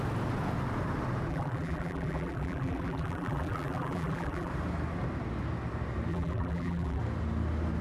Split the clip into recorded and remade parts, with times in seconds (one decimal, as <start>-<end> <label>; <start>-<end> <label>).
0.0-1.3 recorded; 1.3-4.5 remade; 4.5-6.1 recorded; 6.1-7.0 remade; 7.0-7.8 recorded